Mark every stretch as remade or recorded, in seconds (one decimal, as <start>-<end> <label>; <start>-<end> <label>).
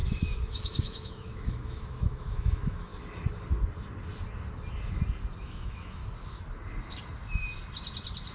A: 0.0-2.9 remade; 2.9-5.4 recorded; 5.4-6.0 remade; 6.0-8.3 recorded